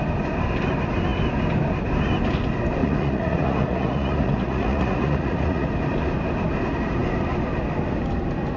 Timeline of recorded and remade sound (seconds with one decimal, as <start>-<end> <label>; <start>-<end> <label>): 0.0-2.8 recorded; 2.8-5.7 remade; 5.7-8.6 recorded